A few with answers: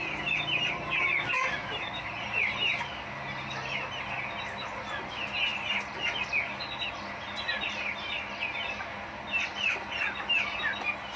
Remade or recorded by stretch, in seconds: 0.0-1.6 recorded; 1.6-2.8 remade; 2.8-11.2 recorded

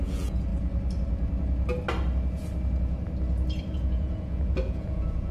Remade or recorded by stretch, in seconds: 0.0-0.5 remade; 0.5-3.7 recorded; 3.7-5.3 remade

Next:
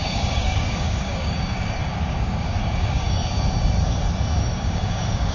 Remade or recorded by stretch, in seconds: 0.0-3.2 remade; 3.2-4.4 recorded; 4.4-5.3 remade